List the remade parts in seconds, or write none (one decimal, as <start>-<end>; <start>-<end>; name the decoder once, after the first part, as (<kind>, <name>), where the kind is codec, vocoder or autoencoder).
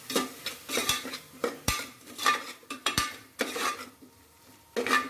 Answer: 0.8-3.9 (vocoder, BigVGAN v2)